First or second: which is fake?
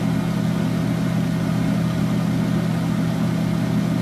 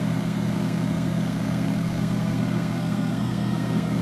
second